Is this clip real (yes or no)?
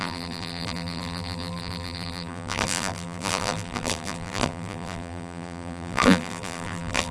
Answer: no